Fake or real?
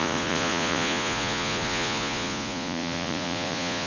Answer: fake